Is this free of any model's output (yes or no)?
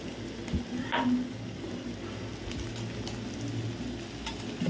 yes